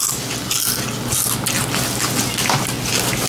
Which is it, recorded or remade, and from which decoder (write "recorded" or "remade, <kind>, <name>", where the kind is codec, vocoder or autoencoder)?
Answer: recorded